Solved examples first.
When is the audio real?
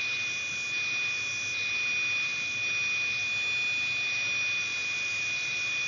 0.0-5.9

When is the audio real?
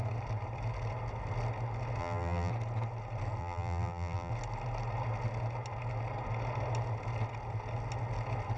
0.0-2.0; 2.5-3.4; 4.3-8.6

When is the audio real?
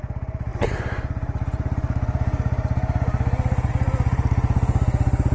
none